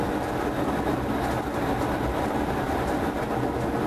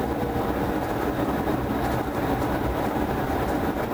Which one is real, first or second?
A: first